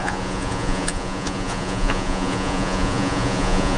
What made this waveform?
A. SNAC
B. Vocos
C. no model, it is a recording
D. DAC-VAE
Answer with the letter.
B